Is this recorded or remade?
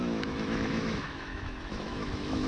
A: remade